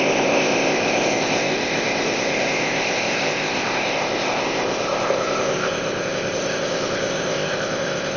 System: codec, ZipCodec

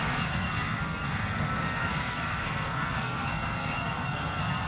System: codec, SNAC